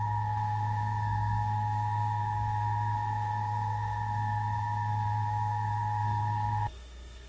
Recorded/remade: remade